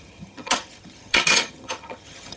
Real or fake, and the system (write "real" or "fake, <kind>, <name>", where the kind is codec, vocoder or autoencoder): fake, vocoder, HiFi-GAN